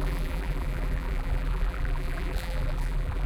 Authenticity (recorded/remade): remade